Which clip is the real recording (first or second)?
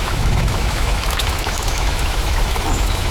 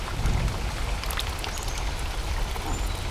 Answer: second